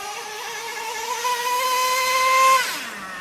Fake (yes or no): no